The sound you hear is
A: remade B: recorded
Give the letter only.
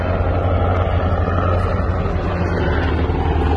B